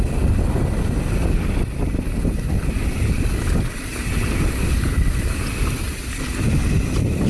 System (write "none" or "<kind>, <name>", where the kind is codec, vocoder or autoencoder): none